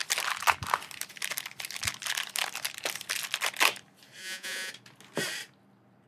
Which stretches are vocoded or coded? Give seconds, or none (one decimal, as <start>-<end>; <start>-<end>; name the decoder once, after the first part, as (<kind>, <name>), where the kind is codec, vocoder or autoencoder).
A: 4.2-4.7 (vocoder, Vocos)